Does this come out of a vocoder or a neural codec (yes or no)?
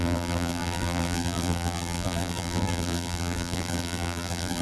yes